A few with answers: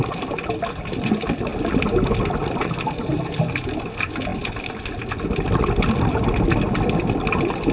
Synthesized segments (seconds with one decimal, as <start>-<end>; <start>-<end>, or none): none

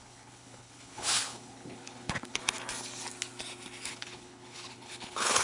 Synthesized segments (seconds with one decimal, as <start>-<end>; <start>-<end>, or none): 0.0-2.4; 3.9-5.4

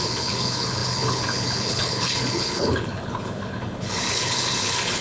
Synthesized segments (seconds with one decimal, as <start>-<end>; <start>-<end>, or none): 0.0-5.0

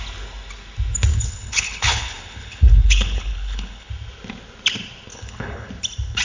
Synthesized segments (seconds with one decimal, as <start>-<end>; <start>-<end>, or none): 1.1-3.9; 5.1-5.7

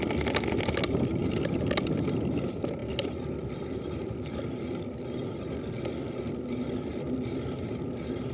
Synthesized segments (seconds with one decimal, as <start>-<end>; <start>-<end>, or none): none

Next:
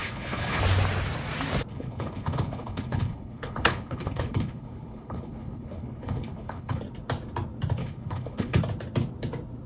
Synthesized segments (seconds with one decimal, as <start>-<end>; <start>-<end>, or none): 0.0-0.6; 1.7-6.8; 7.8-8.6

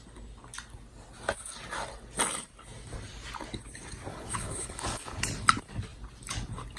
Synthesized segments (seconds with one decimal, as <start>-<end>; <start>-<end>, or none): 4.1-5.2